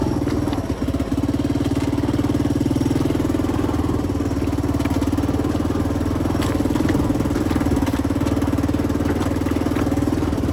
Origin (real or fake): real